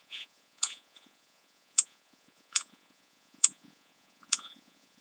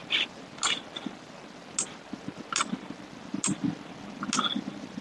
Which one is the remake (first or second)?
first